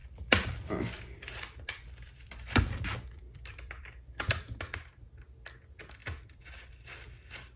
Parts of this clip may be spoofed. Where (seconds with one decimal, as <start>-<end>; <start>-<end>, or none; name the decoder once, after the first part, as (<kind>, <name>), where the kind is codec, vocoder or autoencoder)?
0.0-4.3 (vocoder, BigVGAN v2)